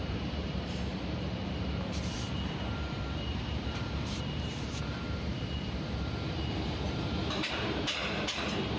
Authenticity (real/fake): fake